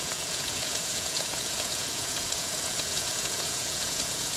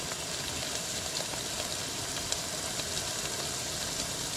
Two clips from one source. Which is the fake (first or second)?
first